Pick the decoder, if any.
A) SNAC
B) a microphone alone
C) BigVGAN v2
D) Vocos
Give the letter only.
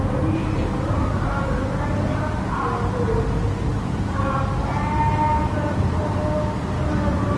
B